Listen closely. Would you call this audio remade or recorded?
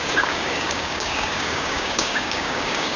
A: remade